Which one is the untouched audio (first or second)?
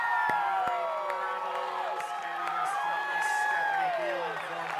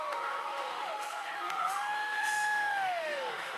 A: first